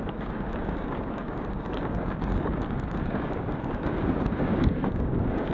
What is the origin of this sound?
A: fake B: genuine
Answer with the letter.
A